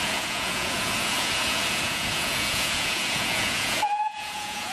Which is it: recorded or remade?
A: remade